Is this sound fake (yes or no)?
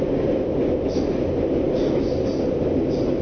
no